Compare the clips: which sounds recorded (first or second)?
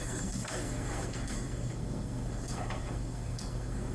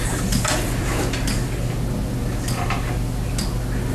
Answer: second